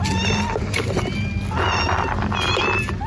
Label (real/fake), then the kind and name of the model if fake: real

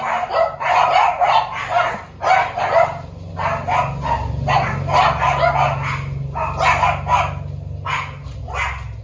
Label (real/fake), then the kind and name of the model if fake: real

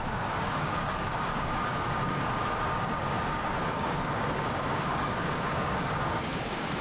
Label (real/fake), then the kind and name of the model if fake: fake, codec, DAC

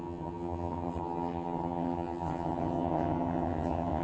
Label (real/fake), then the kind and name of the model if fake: fake, vocoder, HiFi-GAN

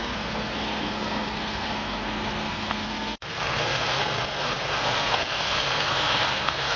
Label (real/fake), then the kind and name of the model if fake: fake, codec, SNAC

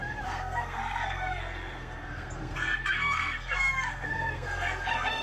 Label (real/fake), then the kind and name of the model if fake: fake, codec, SNAC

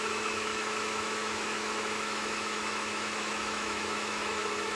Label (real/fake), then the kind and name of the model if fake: fake, autoencoder, DAC-VAE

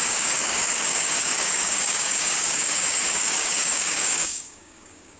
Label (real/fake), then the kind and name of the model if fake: fake, codec, DAC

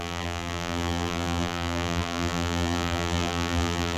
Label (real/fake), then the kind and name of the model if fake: fake, vocoder, BigVGAN v2